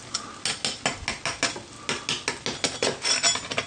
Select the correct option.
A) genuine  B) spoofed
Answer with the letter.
A